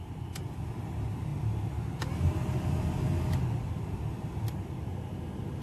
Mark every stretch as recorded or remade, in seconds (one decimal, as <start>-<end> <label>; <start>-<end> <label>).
0.0-5.6 recorded